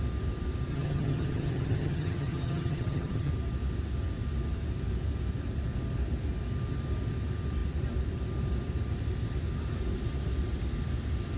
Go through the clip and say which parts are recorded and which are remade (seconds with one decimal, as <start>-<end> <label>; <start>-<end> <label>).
0.0-0.7 recorded; 0.7-3.3 remade; 3.3-11.4 recorded